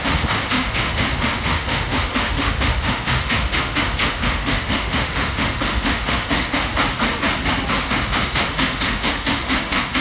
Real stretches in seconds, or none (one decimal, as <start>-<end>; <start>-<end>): 6.7-7.8